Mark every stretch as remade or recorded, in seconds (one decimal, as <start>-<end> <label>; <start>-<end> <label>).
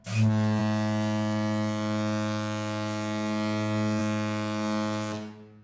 0.0-5.6 recorded